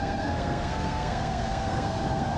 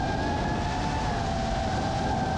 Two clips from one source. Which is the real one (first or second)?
second